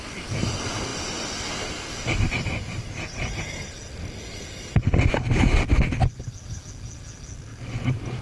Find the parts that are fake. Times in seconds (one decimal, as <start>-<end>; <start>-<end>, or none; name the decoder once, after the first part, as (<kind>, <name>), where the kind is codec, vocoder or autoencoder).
7.5-8.2 (vocoder, Vocos)